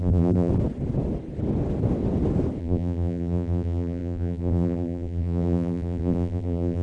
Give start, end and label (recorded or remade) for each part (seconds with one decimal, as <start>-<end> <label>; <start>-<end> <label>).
0.0-0.5 remade; 0.5-2.6 recorded; 2.6-6.8 remade